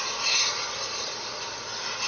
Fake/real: real